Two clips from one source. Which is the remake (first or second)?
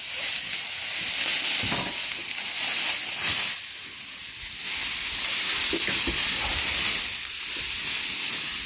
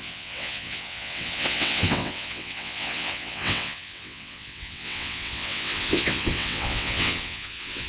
second